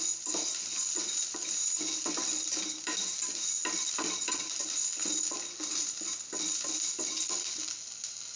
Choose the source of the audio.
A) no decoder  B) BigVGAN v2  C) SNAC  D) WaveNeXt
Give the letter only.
A